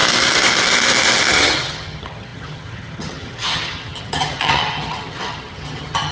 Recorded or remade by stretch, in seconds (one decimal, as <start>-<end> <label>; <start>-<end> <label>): 0.0-1.3 recorded; 1.3-6.1 remade